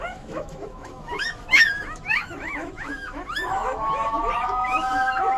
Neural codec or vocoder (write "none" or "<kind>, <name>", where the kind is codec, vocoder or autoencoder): autoencoder, DAC-VAE